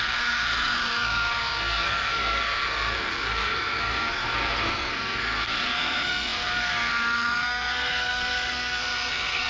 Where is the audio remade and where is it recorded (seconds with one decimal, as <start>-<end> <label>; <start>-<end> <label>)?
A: 0.0-9.5 remade